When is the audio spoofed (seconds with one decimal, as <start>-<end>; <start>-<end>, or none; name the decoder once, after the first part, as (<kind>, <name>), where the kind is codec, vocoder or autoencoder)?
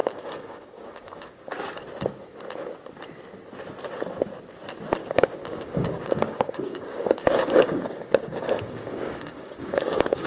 0.0-1.6 (codec, DAC); 5.0-10.3